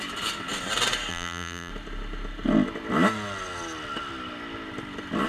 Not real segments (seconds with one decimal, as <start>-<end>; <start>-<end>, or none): 1.1-1.7